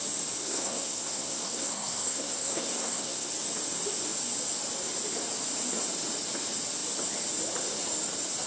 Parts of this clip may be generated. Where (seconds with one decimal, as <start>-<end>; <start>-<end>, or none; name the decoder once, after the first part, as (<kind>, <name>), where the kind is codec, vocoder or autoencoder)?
0.4-3.3 (codec, SNAC)